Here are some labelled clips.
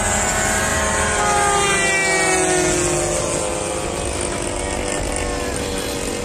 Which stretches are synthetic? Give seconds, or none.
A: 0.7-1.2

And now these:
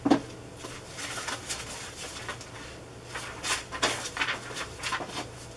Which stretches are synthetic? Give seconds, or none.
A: none

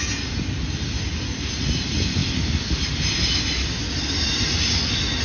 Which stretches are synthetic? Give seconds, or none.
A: none

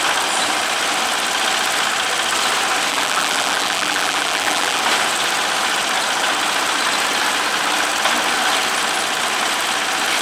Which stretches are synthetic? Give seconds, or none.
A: 2.9-4.8

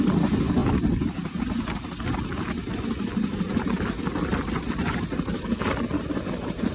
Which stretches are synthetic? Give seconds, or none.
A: 0.0-0.6; 4.6-6.7

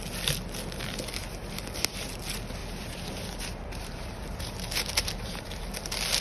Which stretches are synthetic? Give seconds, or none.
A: 1.2-2.2; 2.6-5.6

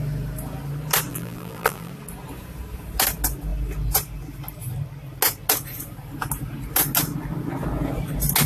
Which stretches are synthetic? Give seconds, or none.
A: 1.1-1.9

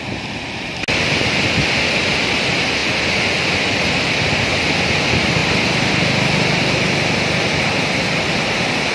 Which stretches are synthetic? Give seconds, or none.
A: none